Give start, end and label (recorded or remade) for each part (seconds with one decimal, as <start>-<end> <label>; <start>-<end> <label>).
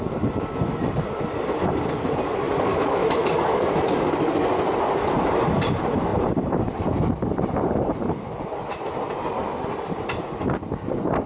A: 0.0-2.7 recorded; 2.7-3.3 remade; 3.3-11.3 recorded